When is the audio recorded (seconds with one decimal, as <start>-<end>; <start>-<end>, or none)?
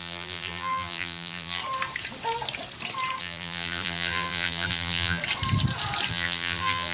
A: 1.6-3.2; 5.2-6.1